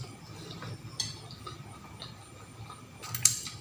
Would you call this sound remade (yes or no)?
no